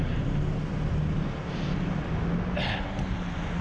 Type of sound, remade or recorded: recorded